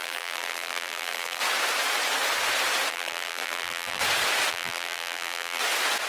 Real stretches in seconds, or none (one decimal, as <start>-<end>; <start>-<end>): 1.4-2.9; 4.0-4.5; 5.6-6.1